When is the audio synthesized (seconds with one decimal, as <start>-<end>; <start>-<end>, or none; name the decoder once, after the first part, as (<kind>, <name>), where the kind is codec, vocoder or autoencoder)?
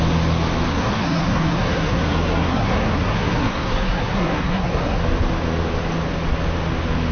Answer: 0.7-5.0 (codec, SNAC)